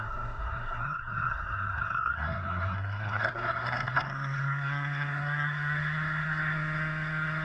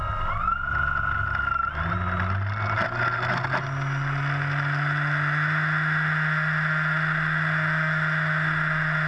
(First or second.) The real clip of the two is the second